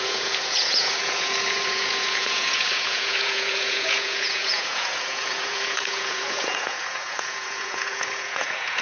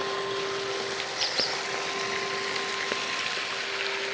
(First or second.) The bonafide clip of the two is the second